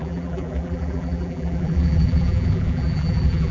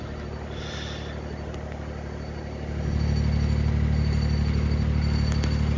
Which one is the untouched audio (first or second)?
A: second